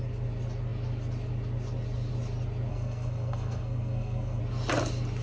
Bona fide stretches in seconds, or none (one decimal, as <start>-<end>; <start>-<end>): 0.0-2.7; 4.4-5.2